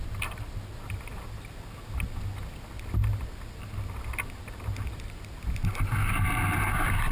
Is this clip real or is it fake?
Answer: real